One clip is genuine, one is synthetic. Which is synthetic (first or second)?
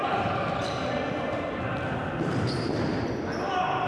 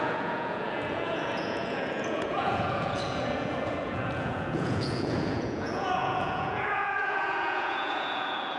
second